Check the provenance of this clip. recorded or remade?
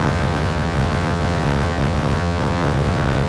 remade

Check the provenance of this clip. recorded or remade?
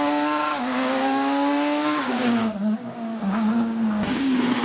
remade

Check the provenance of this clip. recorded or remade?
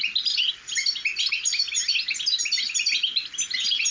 recorded